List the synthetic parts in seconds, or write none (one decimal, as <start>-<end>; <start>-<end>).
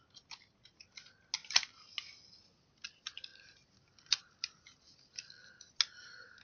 none